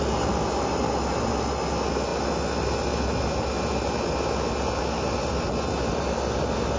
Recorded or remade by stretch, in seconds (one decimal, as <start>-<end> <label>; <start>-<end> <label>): 0.0-6.8 recorded